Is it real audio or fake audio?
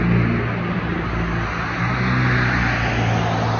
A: real